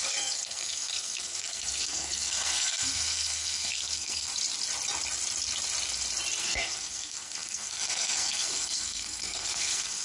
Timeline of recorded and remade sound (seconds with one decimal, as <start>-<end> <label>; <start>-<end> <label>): 0.0-4.3 remade; 4.3-6.4 recorded; 6.4-10.0 remade